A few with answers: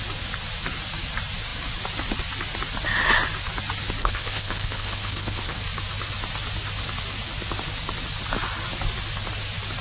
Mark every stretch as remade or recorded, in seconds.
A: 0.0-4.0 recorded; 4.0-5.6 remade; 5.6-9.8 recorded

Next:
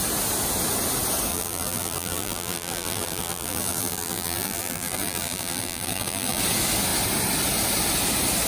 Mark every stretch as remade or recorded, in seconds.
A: 0.0-1.3 recorded; 1.3-6.4 remade; 6.4-8.5 recorded

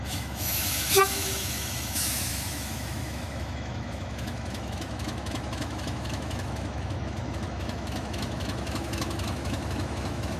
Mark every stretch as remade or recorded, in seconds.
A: 0.0-10.4 remade

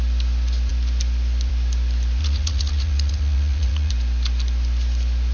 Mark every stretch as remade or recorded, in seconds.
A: 0.0-2.2 recorded; 2.2-3.9 remade; 3.9-5.3 recorded

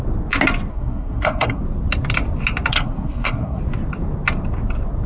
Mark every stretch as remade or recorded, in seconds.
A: 0.0-0.7 recorded; 0.7-1.6 remade; 1.6-2.7 recorded; 2.7-3.6 remade; 3.6-5.1 recorded

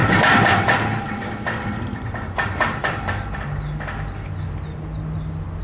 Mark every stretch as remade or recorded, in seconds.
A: 0.0-3.4 remade; 3.4-5.6 recorded

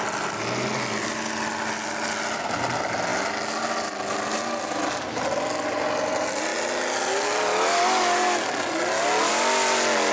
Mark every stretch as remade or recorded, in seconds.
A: 0.0-10.1 recorded

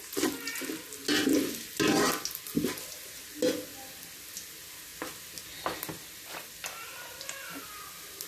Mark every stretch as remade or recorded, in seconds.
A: 0.0-8.3 recorded